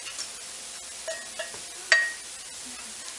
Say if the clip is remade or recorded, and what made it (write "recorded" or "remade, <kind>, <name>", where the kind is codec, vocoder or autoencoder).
recorded